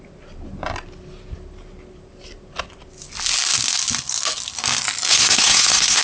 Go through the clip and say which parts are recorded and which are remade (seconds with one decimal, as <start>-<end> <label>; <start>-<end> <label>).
0.0-5.1 recorded; 5.1-6.0 remade